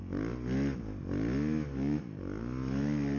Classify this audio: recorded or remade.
recorded